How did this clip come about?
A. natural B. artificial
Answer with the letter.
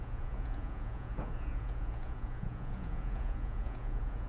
B